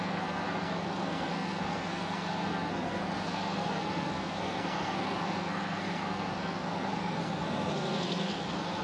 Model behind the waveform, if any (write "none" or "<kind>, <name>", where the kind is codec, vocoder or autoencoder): codec, SNAC